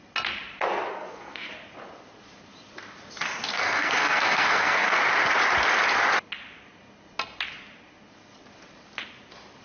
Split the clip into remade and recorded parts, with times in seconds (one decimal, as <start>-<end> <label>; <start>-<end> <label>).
0.0-0.9 recorded; 0.9-1.5 remade; 1.5-3.5 recorded; 3.5-5.0 remade; 5.0-9.6 recorded